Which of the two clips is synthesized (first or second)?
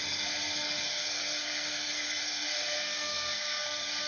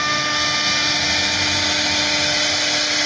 first